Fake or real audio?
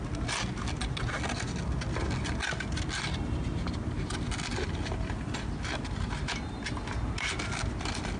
real